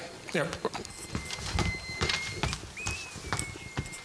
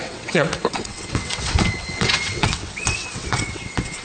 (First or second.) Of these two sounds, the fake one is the second